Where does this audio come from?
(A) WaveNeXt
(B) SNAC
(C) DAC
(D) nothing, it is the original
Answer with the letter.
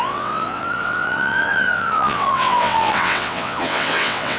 A